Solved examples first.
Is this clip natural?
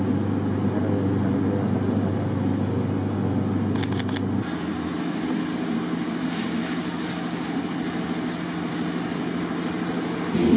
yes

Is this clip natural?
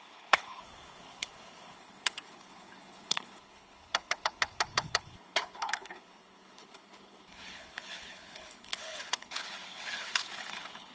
no